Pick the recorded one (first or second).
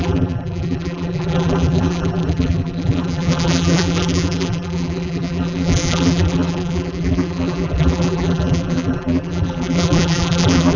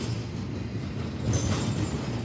second